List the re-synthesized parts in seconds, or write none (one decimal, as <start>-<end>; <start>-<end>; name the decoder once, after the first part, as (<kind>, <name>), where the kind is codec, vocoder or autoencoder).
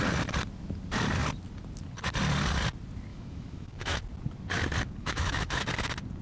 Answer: 3.1-4.0 (autoencoder, DAC-VAE); 5.0-5.7